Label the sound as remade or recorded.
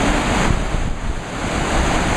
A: recorded